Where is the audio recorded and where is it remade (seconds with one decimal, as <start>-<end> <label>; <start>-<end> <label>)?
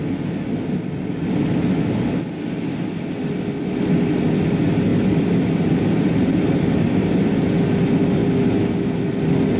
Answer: 0.0-9.6 recorded